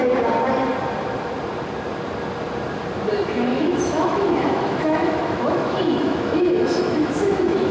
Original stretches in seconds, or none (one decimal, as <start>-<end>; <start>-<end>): 0.0-3.5